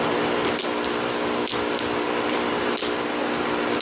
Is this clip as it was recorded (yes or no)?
yes